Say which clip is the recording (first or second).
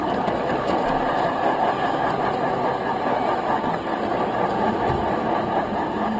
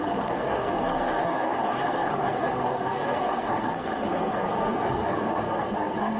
first